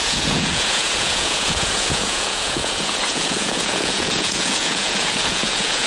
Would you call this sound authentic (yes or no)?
no